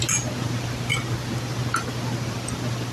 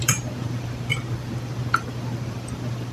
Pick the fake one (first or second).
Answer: second